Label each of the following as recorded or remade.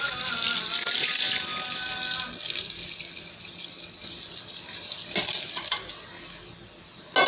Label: recorded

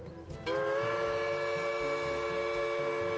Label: recorded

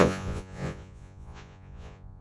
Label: remade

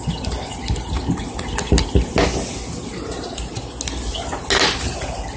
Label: recorded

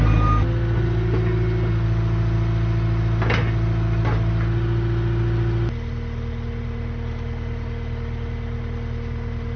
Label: recorded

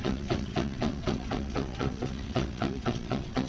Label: remade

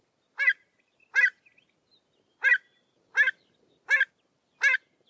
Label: recorded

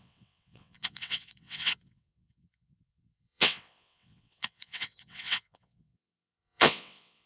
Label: remade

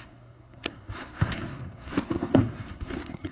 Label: remade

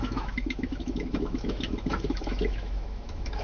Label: remade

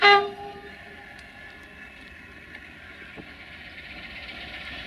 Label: recorded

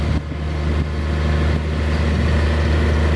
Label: recorded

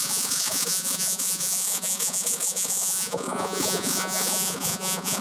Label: remade